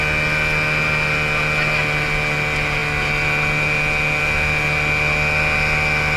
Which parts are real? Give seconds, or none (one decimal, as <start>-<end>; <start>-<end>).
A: 0.0-6.2